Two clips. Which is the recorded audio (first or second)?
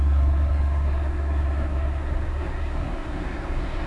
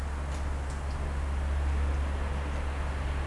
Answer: second